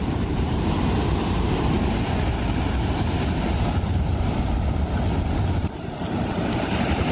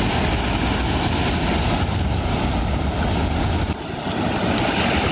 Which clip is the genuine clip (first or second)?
second